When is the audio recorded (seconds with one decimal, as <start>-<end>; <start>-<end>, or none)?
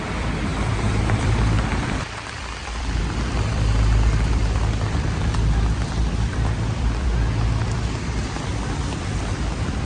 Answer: none